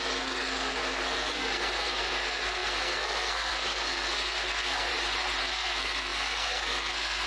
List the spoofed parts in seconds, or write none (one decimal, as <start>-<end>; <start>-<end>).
0.0-4.9; 5.4-7.3